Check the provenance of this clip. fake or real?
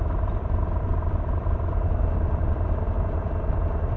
fake